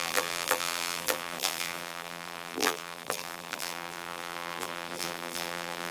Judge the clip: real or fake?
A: fake